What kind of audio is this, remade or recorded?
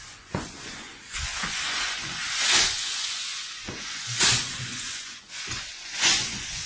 remade